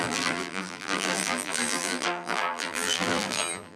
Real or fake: fake